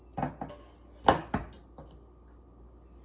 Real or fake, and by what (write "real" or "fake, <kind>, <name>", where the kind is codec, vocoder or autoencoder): real